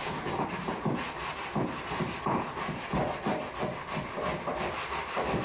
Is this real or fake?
real